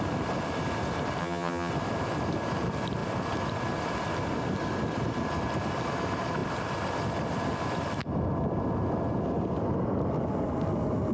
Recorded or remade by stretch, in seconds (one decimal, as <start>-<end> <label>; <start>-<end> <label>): 0.0-1.2 recorded; 1.2-1.7 remade; 1.7-11.1 recorded